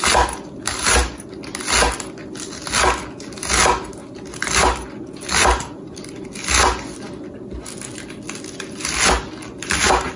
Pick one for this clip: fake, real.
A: real